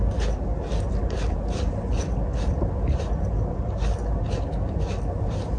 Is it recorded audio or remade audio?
recorded